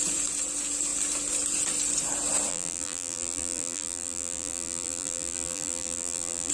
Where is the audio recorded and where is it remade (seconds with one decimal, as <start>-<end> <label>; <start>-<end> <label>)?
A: 0.0-2.5 recorded; 2.5-6.5 remade